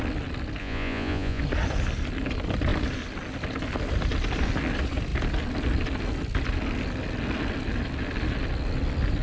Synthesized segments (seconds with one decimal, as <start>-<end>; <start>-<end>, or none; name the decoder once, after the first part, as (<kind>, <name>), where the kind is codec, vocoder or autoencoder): 0.6-1.4 (vocoder, Vocos)